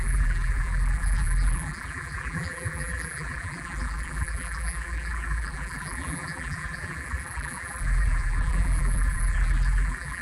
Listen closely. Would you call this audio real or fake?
fake